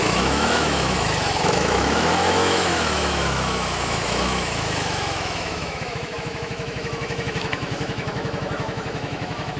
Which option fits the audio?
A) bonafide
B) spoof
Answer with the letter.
B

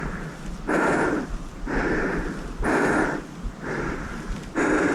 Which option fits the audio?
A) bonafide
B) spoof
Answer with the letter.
A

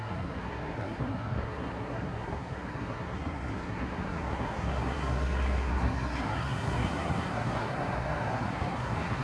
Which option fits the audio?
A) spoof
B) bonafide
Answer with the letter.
A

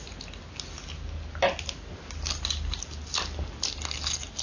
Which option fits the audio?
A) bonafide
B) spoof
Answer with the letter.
A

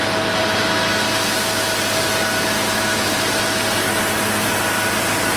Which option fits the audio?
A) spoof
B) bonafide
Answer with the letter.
B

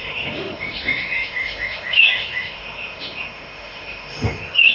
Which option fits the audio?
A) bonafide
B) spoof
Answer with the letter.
B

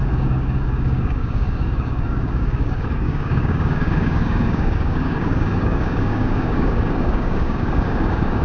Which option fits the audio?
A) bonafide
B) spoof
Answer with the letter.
B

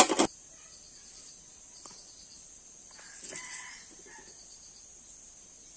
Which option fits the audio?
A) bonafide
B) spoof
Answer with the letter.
A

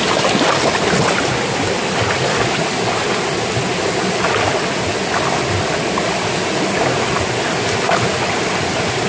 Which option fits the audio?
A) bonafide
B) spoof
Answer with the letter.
A